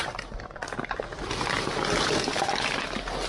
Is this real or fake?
real